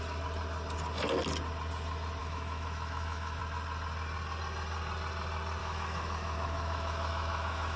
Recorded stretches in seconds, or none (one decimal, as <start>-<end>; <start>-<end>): 0.0-2.2; 3.4-5.6